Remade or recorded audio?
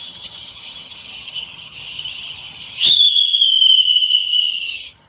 remade